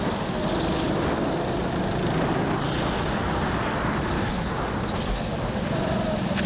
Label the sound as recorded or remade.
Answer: recorded